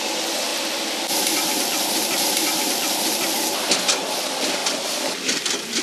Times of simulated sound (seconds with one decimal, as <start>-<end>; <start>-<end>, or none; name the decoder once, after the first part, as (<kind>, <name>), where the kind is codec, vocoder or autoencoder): none